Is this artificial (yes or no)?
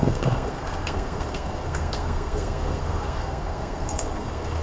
yes